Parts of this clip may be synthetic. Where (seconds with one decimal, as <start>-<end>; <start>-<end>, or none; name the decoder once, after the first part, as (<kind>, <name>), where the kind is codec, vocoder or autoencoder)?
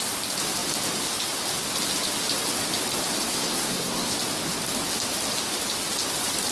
3.3-4.1 (codec, SNAC)